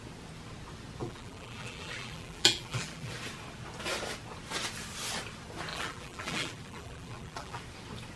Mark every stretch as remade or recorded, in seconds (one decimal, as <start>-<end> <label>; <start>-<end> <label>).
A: 0.0-1.0 recorded; 1.0-3.1 remade; 3.1-5.7 recorded; 5.7-7.6 remade; 7.6-8.2 recorded